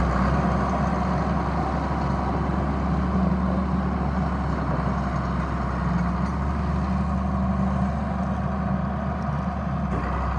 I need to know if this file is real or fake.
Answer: real